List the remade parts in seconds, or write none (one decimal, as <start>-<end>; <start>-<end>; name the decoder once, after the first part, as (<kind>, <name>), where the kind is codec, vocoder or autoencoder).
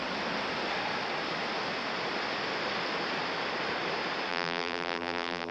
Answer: 4.3-5.5 (vocoder, BigVGAN v2)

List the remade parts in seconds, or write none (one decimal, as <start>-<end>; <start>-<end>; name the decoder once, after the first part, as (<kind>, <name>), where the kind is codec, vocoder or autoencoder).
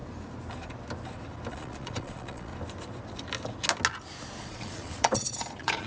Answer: 1.5-2.5 (vocoder, Vocos); 4.4-5.9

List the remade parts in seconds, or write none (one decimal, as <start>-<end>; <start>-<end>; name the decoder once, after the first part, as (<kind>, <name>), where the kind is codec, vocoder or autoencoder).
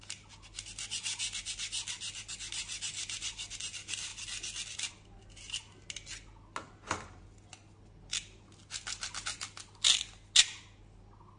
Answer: none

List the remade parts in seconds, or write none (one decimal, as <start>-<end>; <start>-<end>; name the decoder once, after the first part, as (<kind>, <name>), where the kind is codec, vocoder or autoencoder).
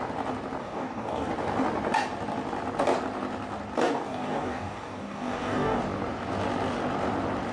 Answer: 0.6-1.3 (codec, DAC); 3.8-5.8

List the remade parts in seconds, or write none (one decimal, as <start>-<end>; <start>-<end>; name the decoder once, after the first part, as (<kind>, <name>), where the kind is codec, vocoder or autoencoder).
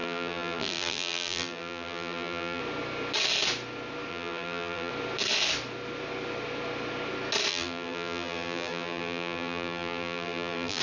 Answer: 0.0-2.6 (vocoder, BigVGAN v2); 4.1-4.9; 7.5-10.8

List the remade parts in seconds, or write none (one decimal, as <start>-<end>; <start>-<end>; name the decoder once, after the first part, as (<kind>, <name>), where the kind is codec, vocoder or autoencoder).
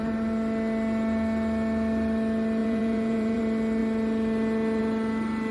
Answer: 2.6-3.4 (vocoder, Vocos)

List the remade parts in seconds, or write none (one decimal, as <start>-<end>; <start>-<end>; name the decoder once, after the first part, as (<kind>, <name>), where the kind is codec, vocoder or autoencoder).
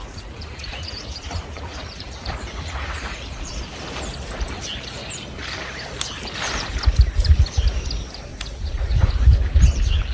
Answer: 0.0-3.6 (vocoder, Vocos); 8.3-9.1